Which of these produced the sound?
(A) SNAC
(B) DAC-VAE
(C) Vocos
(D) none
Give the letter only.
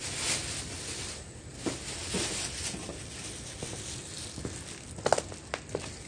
D